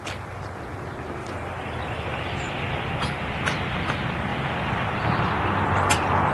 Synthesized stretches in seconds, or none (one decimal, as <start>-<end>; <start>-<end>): 1.2-2.5